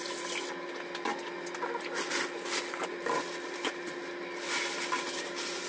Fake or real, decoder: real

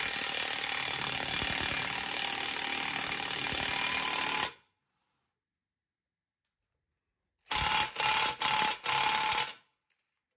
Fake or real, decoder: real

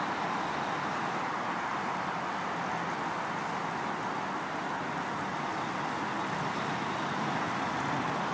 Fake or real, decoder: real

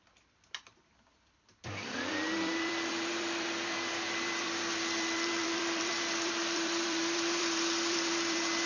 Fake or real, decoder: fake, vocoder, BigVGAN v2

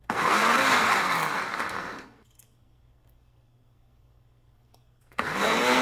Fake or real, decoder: fake, codec, SNAC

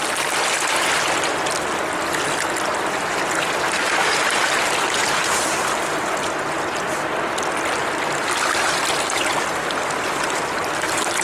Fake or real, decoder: real